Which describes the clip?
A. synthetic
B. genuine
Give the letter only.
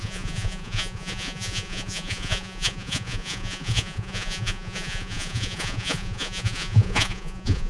A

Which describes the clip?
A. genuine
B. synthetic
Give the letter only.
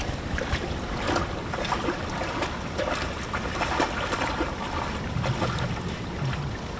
A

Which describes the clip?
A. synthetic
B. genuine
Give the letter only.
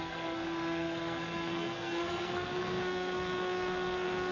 A